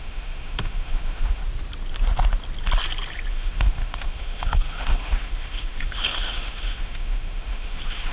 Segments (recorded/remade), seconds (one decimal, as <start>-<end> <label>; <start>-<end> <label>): 0.0-1.4 remade; 1.4-3.3 recorded; 3.3-8.1 remade